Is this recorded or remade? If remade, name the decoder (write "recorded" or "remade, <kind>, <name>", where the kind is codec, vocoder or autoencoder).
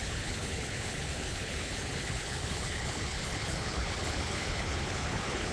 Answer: remade, codec, HILCodec